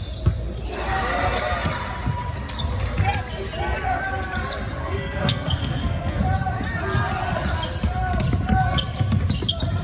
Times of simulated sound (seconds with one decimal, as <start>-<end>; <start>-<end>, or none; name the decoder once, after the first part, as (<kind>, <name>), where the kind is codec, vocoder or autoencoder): 4.8-6.2 (codec, SNAC)